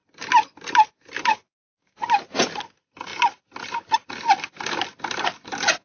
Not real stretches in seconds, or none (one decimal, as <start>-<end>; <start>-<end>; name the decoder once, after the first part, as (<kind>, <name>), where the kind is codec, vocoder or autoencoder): 1.3-2.0 (codec, DAC)